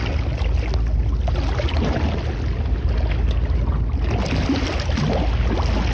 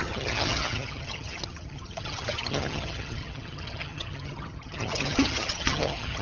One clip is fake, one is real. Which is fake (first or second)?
second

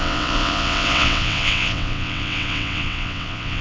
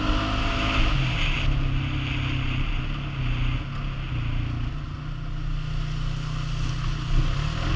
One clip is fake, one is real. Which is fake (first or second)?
first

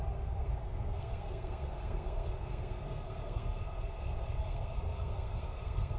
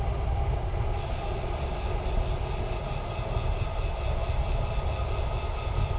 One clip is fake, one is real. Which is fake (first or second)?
first